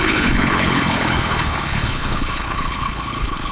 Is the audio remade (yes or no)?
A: yes